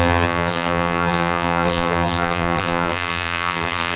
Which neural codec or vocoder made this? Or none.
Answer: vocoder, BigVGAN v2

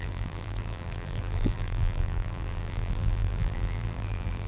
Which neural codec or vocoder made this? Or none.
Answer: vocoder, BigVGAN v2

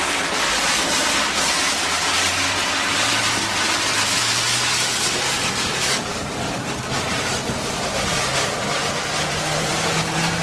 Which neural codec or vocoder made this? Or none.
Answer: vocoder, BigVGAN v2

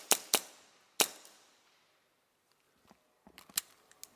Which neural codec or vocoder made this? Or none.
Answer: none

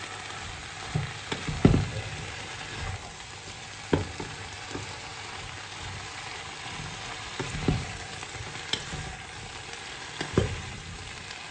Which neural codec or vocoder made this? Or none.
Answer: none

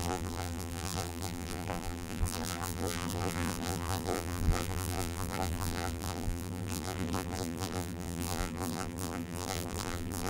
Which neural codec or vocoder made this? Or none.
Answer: vocoder, BigVGAN v2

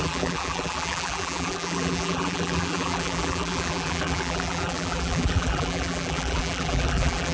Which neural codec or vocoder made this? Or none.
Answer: vocoder, BigVGAN v2